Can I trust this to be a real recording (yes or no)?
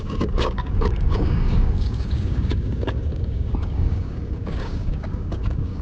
no